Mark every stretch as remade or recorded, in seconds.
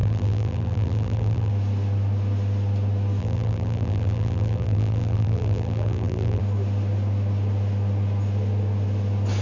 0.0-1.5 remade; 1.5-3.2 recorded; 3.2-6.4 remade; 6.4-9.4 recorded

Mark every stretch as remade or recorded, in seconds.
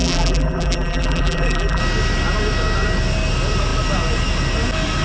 0.0-1.8 remade; 1.8-5.0 recorded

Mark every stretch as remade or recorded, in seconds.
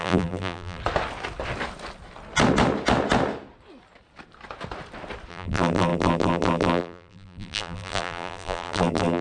0.0-0.8 remade; 0.8-5.3 recorded; 5.3-9.2 remade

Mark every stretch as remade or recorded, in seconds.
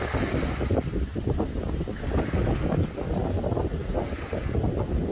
0.0-5.1 recorded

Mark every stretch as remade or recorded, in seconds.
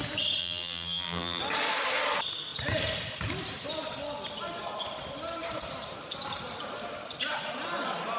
0.0-0.4 recorded; 0.4-1.4 remade; 1.4-8.2 recorded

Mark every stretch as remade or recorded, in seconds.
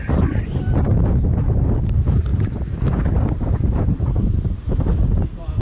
0.0-5.6 remade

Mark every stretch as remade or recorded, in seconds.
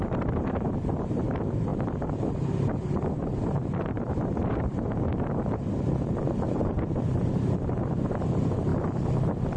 0.0-8.7 remade; 8.7-9.6 recorded